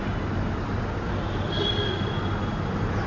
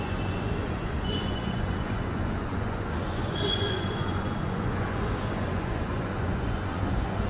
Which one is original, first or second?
first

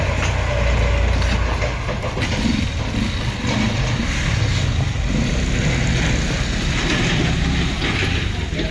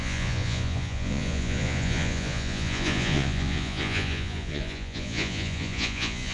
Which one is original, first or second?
first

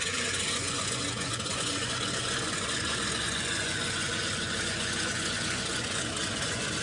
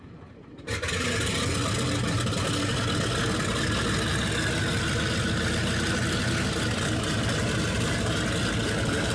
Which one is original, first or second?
second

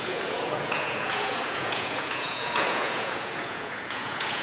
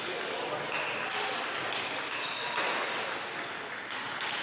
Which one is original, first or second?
second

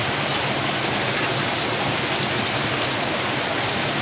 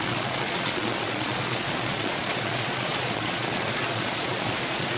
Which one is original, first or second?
first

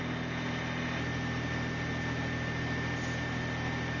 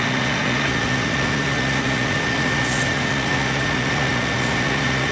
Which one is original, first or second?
first